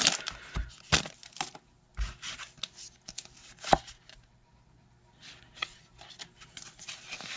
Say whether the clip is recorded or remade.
recorded